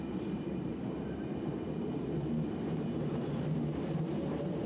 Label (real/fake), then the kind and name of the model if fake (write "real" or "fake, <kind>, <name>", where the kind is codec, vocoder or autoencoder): fake, vocoder, BigVGAN v2